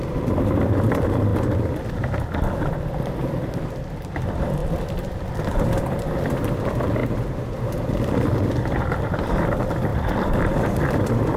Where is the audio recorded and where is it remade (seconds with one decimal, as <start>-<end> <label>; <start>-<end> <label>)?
0.0-1.3 remade; 1.3-1.9 recorded; 1.9-7.0 remade; 7.0-7.6 recorded; 7.6-11.4 remade